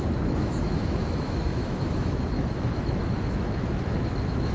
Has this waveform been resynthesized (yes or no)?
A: yes